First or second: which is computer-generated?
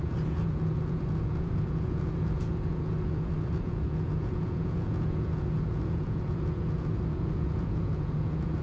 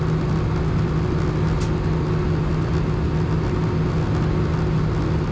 first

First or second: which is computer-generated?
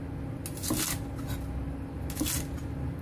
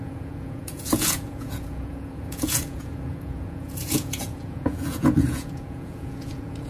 second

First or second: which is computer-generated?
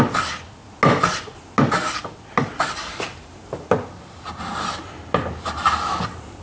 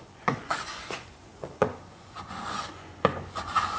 second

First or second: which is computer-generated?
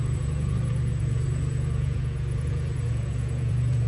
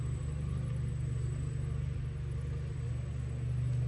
first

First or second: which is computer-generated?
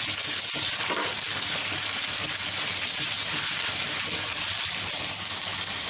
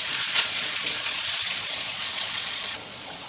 second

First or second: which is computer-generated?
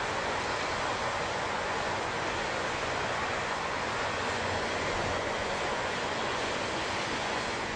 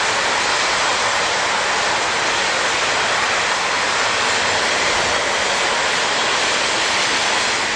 first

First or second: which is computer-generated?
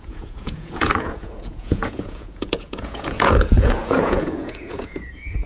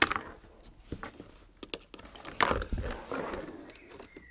first